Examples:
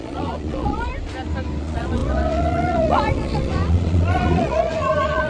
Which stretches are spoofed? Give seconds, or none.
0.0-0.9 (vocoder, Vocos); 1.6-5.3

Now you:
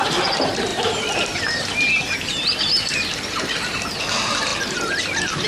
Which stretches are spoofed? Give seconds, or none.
0.7-4.0 (vocoder, BigVGAN v2); 4.5-5.0

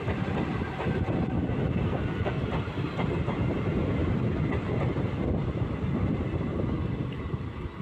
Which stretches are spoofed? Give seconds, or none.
1.9-2.4 (codec, SNAC)

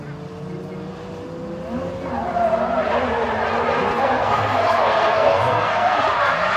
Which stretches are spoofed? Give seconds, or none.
3.9-6.0 (codec, SNAC)